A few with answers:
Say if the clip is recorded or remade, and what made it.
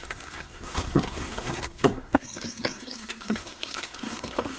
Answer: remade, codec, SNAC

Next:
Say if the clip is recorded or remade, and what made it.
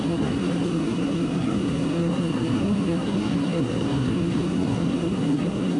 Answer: remade, codec, SNAC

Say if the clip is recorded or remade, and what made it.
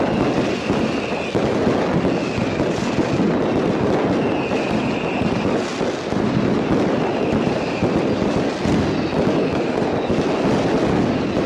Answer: recorded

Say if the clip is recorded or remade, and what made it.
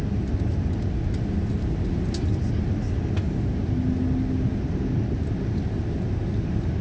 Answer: recorded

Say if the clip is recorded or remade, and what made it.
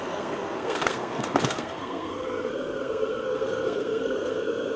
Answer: remade, codec, SNAC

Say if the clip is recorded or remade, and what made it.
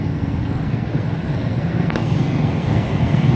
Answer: remade, codec, SNAC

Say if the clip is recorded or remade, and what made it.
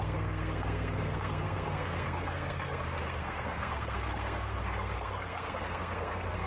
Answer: remade, codec, SNAC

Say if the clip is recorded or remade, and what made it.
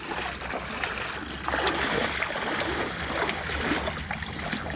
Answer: recorded